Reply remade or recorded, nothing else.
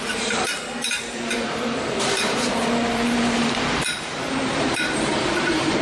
remade